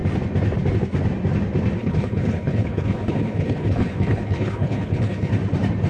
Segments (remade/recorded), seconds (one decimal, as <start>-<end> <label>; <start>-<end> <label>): 0.0-1.8 recorded; 1.8-5.3 remade; 5.3-5.9 recorded